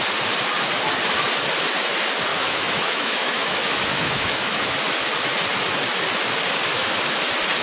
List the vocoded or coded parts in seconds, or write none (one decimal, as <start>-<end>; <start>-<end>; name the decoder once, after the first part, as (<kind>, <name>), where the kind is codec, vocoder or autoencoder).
2.3-4.7 (autoencoder, DAC-VAE)